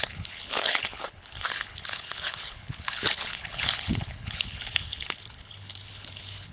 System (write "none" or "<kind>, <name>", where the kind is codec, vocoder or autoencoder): codec, HILCodec